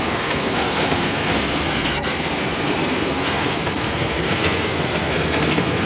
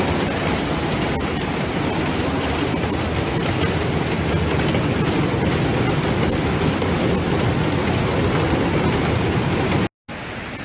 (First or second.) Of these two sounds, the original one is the second